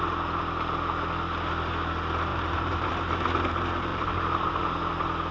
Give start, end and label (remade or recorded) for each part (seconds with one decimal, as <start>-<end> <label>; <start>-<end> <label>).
0.0-2.3 recorded; 2.3-2.9 remade; 2.9-3.9 recorded; 3.9-4.6 remade; 4.6-5.3 recorded